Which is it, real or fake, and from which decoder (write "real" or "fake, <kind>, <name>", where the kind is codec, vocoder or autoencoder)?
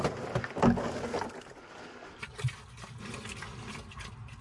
real